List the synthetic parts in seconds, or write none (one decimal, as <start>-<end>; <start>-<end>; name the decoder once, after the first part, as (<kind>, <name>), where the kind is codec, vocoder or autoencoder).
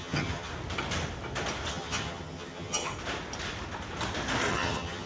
0.0-0.5 (vocoder, HiFi-GAN); 1.7-2.9; 4.5-5.1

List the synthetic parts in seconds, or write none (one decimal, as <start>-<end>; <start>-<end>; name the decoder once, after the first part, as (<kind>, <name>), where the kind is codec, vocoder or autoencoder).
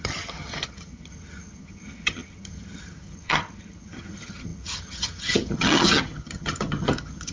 0.0-7.3 (vocoder, HiFi-GAN)